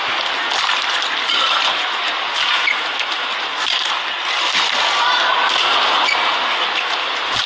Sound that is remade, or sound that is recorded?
recorded